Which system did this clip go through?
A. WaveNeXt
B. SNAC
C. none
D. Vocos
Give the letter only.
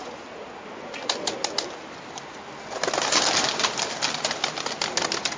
C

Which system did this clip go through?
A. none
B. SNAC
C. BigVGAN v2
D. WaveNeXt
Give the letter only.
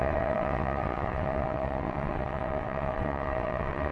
D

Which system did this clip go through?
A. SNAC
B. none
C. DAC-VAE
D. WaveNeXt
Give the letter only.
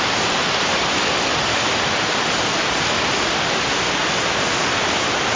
B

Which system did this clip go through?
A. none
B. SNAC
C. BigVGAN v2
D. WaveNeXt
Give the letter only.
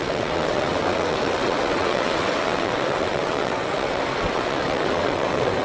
D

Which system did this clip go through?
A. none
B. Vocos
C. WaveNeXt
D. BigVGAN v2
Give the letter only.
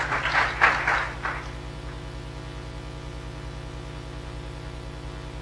A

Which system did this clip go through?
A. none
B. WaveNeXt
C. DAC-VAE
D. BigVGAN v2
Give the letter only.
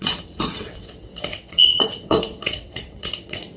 B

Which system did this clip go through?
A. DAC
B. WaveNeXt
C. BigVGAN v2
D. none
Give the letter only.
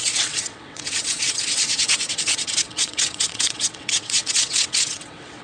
B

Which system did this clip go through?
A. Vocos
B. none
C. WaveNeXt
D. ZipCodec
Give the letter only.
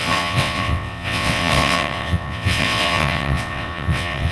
C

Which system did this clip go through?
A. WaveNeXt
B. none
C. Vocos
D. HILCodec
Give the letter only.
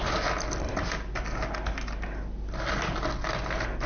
B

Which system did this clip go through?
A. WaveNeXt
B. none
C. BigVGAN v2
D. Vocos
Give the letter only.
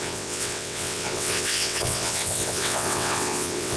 A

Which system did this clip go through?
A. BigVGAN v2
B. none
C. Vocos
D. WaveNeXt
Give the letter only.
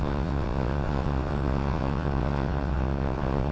D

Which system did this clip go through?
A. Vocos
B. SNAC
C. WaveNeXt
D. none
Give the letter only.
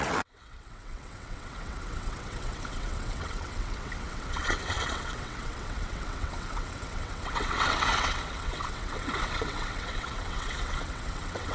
C